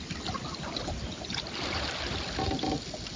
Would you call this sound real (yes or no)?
yes